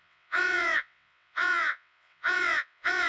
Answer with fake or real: fake